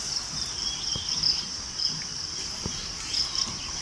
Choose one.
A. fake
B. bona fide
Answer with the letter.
A